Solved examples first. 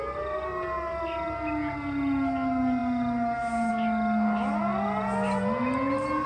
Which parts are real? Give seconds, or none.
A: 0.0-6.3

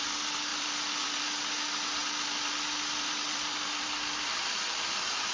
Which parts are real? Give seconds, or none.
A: 0.0-0.5; 1.4-2.0